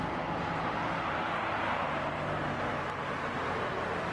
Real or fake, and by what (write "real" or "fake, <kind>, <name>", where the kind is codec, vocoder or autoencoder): real